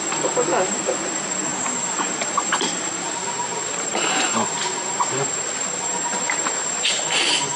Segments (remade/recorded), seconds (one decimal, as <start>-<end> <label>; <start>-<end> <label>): 0.0-7.6 remade